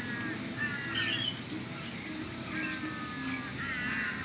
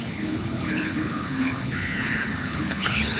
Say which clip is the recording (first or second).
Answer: first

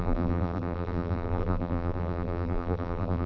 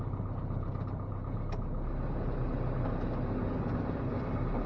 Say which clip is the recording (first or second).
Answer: second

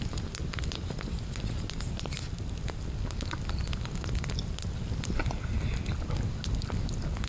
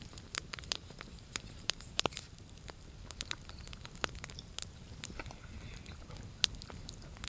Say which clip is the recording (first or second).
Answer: first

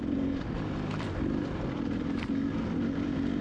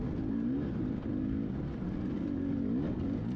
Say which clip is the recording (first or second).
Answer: second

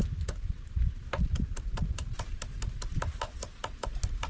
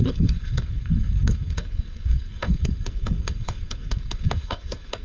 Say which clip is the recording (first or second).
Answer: first